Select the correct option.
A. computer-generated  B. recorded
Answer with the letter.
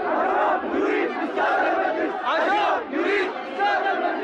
B